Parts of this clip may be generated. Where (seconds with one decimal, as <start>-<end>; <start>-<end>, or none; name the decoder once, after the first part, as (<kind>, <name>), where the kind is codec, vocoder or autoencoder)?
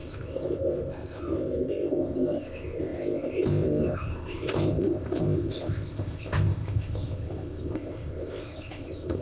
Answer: 0.0-9.2 (codec, ZipCodec)